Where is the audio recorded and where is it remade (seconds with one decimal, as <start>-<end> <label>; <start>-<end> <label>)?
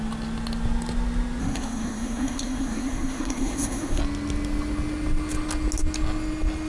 0.0-1.4 recorded; 1.4-4.0 remade; 4.0-6.7 recorded